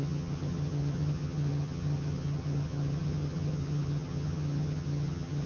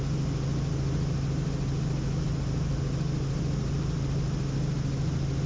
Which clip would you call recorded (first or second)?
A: second